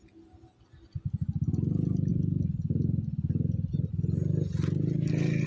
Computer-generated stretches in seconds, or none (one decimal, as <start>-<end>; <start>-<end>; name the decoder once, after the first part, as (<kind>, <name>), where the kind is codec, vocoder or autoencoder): none